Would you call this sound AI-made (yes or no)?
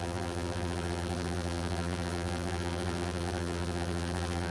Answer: yes